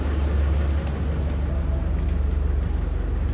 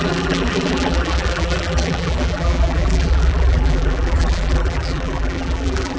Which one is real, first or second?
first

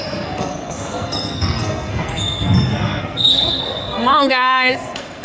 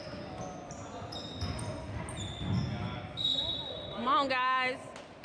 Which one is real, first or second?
second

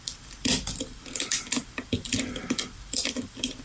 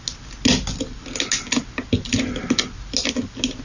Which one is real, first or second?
second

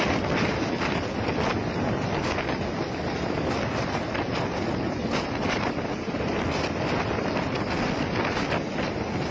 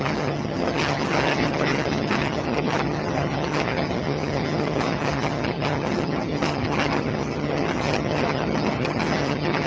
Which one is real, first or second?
first